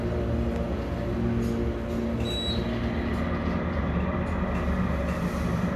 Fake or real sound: real